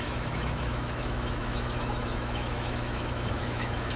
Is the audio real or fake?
fake